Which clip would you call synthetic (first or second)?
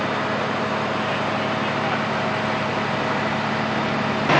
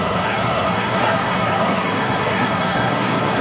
second